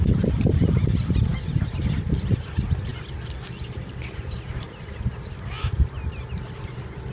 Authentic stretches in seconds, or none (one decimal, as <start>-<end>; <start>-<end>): 0.0-7.1